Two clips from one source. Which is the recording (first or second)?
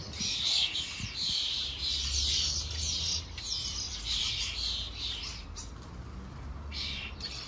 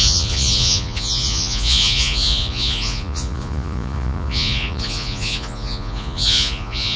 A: first